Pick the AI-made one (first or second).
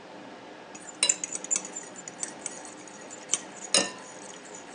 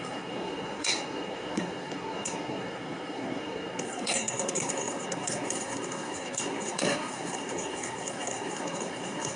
second